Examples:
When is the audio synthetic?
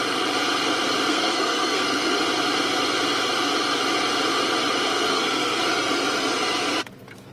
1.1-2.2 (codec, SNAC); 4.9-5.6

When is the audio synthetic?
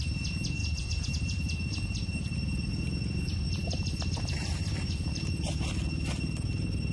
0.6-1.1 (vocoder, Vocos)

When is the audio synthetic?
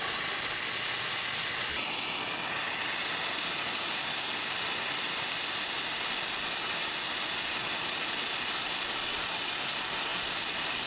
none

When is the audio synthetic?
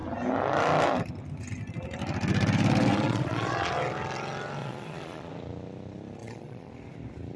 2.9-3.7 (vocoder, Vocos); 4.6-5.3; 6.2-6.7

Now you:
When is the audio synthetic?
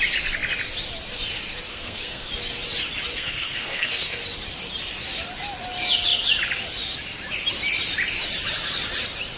1.7-2.3 (codec, SNAC); 3.1-4.2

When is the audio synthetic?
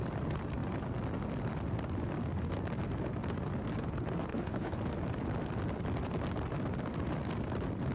4.3-4.8 (codec, HILCodec)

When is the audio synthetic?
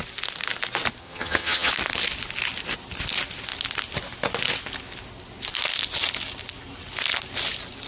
1.0-1.7 (vocoder, HiFi-GAN)